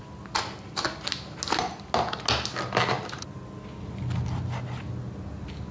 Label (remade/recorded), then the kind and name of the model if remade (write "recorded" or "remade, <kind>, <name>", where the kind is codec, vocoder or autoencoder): recorded